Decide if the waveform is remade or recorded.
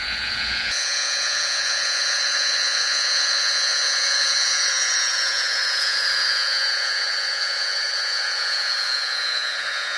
remade